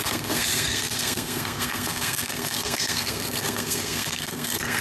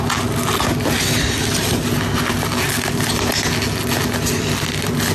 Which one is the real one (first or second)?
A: second